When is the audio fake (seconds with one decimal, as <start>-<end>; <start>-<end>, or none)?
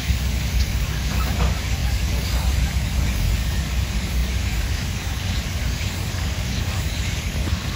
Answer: 0.0-7.8